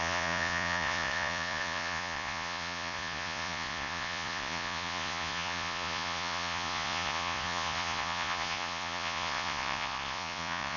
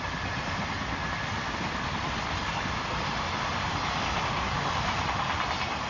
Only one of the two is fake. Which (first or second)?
first